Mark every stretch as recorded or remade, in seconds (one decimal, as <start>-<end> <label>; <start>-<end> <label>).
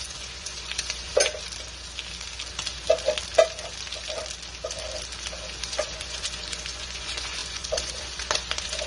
0.0-1.1 remade; 1.1-5.6 recorded; 5.6-8.9 remade